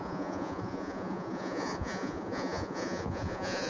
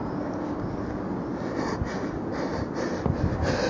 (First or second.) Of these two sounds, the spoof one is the first